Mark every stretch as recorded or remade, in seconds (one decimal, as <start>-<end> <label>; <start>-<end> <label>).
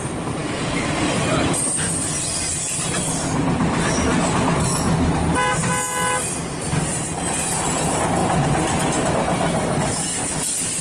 0.0-10.8 recorded